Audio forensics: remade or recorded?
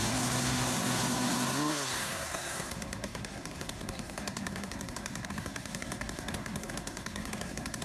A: remade